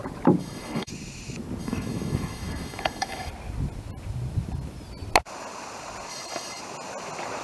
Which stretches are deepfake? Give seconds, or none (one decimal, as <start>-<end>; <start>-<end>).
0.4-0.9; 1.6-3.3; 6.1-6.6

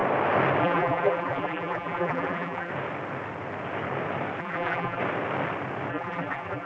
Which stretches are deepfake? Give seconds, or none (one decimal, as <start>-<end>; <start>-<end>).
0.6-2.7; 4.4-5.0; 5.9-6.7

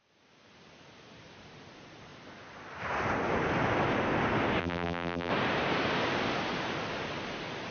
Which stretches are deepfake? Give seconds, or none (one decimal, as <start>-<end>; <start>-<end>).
4.6-5.3

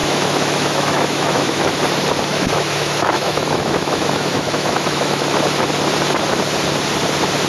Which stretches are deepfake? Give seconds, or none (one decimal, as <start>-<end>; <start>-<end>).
0.0-1.7; 2.3-5.2